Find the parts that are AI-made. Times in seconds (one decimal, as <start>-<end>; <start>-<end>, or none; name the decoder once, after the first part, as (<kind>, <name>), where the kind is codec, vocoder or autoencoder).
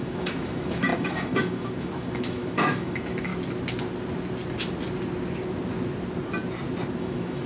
0.0-3.3 (autoencoder, DAC-VAE); 7.0-7.5